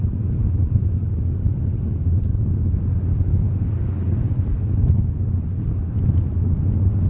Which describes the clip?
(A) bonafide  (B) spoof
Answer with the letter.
A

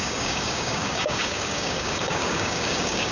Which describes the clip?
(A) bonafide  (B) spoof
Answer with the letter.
B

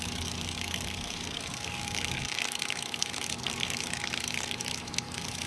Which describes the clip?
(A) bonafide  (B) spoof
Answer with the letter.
B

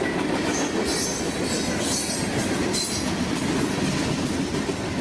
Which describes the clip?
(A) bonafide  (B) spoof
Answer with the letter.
A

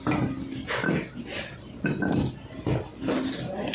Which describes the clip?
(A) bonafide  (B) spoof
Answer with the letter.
A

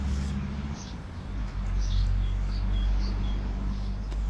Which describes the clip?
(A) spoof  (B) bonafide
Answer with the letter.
A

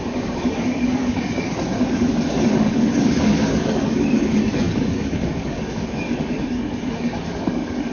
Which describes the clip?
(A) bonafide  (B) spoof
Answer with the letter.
B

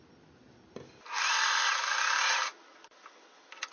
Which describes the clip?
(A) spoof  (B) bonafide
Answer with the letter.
B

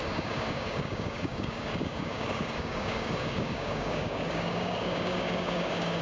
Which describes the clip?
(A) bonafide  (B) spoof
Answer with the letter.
B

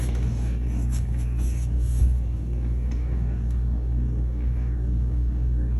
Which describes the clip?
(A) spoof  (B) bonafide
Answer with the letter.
A